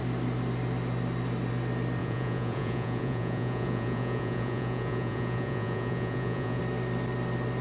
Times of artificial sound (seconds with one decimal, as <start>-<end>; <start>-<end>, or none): 2.0-6.6